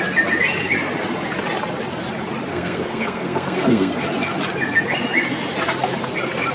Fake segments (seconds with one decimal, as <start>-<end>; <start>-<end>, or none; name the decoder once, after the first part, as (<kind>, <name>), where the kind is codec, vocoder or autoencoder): 2.5-3.9 (codec, SNAC)